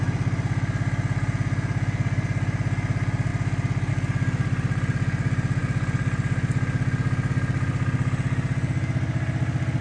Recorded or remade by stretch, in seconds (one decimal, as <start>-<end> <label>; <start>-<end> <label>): 0.0-9.8 recorded